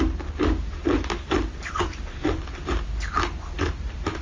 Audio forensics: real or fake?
real